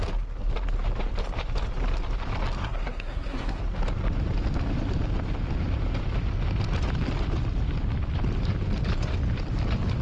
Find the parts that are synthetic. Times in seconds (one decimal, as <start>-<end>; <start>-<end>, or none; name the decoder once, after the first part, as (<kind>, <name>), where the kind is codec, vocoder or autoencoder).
2.6-3.6 (codec, SNAC)